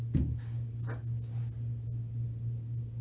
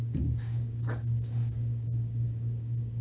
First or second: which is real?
first